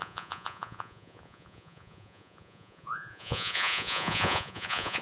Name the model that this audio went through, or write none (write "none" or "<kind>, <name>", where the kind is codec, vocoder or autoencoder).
vocoder, Vocos